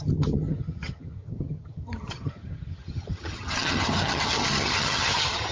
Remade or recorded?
remade